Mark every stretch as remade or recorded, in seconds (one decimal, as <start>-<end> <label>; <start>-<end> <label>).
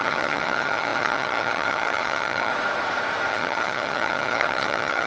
0.0-2.5 remade; 2.5-3.3 recorded; 3.3-5.1 remade